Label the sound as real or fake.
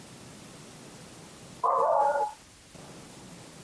real